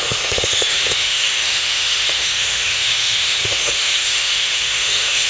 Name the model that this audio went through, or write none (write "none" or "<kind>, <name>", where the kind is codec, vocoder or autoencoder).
autoencoder, DAC-VAE